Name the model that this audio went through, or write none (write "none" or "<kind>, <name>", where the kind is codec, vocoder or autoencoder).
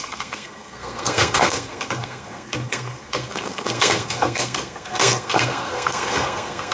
codec, SNAC